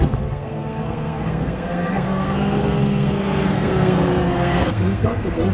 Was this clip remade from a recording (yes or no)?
yes